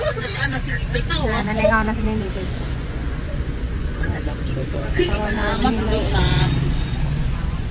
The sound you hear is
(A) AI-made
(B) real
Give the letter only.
A